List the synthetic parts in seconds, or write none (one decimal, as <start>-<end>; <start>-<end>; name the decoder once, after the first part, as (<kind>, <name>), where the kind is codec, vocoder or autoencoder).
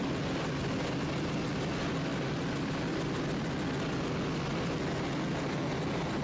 none